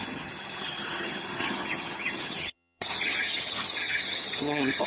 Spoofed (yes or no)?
yes